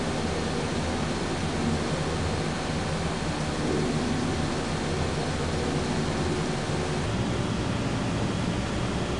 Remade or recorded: recorded